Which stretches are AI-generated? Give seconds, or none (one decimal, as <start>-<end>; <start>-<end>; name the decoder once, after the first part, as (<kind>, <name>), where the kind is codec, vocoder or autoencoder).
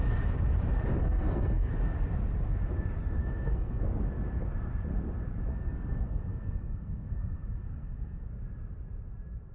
1.0-1.7 (codec, SNAC); 3.2-3.8; 5.5-8.3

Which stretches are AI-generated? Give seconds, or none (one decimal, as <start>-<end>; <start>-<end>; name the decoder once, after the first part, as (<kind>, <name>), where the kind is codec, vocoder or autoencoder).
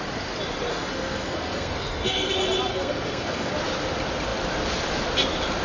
0.7-2.3 (codec, SNAC); 2.7-3.5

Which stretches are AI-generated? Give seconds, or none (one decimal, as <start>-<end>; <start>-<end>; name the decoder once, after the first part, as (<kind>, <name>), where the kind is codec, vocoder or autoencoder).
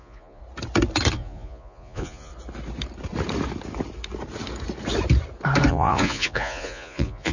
0.0-0.4 (vocoder, Vocos); 1.1-2.3; 5.7-7.3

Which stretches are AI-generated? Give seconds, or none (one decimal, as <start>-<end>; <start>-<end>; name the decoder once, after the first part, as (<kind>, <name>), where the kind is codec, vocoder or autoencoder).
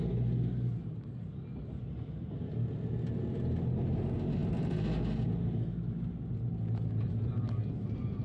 none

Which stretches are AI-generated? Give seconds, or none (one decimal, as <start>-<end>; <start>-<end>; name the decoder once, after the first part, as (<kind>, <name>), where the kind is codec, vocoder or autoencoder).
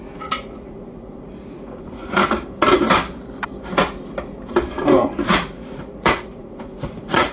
0.0-2.2 (vocoder, Vocos); 5.3-7.3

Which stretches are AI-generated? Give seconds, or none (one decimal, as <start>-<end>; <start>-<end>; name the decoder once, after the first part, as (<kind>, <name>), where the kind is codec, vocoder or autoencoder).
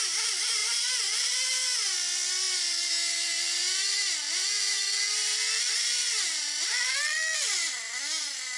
none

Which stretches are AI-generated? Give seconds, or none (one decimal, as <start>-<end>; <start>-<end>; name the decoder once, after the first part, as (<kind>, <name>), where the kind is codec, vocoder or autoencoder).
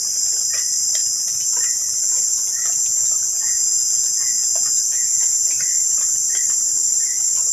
1.0-5.4 (vocoder, Vocos)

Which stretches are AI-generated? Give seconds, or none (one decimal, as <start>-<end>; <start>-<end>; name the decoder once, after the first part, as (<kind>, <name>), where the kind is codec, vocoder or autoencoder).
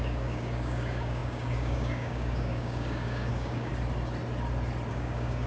0.0-3.7 (codec, DAC); 4.9-5.5